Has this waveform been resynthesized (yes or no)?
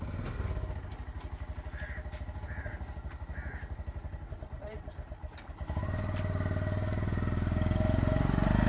no